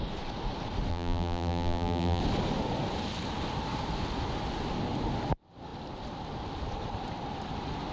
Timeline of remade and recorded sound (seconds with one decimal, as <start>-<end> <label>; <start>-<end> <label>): 0.0-0.9 recorded; 0.9-2.2 remade; 2.2-7.9 recorded